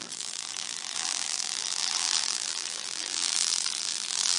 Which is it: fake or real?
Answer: fake